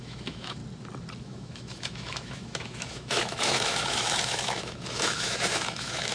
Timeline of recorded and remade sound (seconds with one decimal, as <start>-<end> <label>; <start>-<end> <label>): 0.0-0.6 remade; 0.6-1.2 recorded; 1.2-6.1 remade